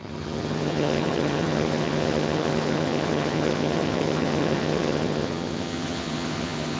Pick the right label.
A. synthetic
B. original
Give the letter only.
A